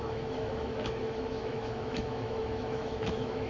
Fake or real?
fake